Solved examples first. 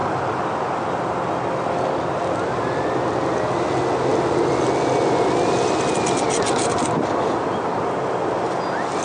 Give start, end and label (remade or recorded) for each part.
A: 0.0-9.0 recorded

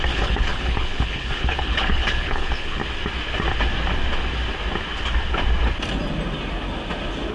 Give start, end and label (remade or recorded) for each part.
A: 0.0-2.8 remade; 2.8-7.3 recorded

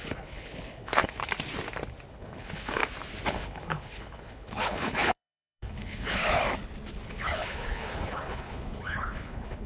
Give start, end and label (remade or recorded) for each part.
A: 0.0-1.2 remade; 1.2-2.1 recorded; 2.1-2.8 remade; 2.8-3.3 recorded; 3.3-6.4 remade; 6.4-7.0 recorded; 7.0-9.7 remade

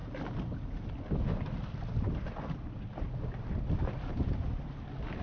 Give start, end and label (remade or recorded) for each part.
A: 0.0-5.2 recorded

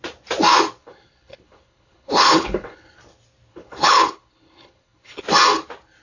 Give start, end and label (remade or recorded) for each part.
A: 0.0-0.8 recorded; 0.8-2.9 remade; 2.9-3.5 recorded; 3.5-5.2 remade; 5.2-6.0 recorded